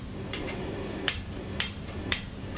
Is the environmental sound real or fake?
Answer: fake